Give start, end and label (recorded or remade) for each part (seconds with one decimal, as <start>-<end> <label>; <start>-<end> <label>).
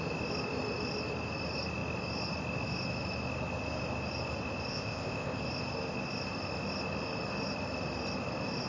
0.0-4.7 recorded; 4.7-5.4 remade; 5.4-8.7 recorded